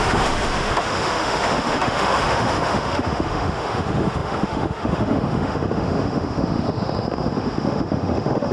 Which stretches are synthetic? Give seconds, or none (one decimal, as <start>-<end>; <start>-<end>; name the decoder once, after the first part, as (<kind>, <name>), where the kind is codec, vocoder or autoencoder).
0.0-8.5 (autoencoder, DAC-VAE)